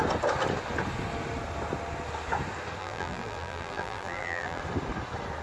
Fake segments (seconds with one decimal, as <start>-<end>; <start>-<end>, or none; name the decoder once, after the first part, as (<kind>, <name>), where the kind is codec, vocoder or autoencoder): 2.8-4.6 (vocoder, BigVGAN v2)